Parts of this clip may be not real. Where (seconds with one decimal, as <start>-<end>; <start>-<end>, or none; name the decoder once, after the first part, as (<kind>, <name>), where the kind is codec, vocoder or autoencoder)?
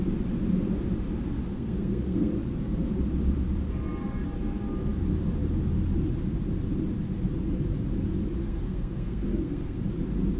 1.5-2.3 (codec, SNAC); 8.4-9.9